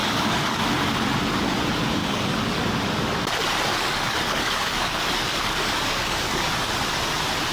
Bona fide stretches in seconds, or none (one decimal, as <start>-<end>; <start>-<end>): 0.6-2.0; 2.6-3.7; 6.7-7.5